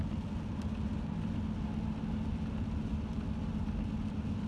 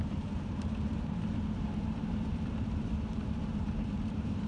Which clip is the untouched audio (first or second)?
first